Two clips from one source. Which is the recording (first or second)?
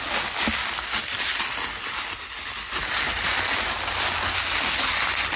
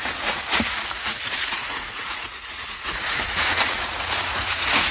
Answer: first